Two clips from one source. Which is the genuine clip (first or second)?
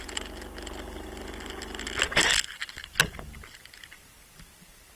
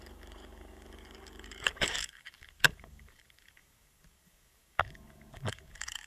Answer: first